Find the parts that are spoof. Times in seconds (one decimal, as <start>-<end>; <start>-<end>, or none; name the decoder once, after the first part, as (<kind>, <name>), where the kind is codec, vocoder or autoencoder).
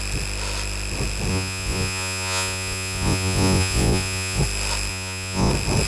1.3-4.4 (vocoder, Vocos); 4.9-5.5